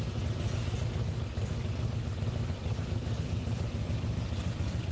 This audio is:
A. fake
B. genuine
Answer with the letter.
B